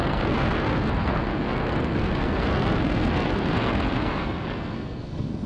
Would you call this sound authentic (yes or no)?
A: no